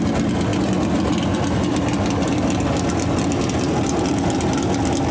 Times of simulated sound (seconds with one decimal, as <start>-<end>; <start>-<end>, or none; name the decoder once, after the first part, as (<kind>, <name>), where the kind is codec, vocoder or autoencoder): none